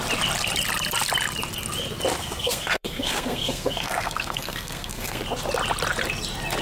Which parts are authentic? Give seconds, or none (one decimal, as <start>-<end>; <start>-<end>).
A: 0.0-2.2; 5.2-6.6

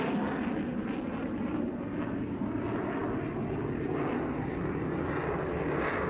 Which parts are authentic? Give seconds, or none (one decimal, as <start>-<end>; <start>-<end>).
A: 0.0-6.1

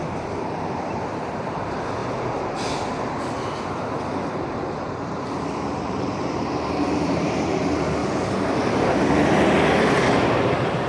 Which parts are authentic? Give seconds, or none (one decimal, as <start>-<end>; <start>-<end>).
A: 2.0-5.8; 8.0-10.2

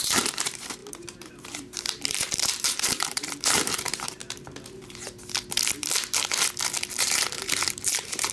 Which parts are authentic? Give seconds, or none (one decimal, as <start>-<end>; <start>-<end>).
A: 4.2-7.0

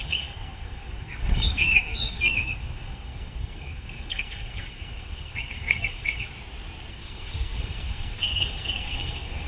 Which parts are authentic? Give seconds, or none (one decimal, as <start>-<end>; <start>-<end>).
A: 6.3-6.9